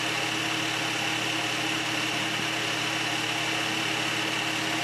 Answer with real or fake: real